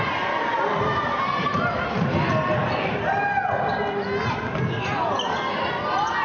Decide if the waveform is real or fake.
real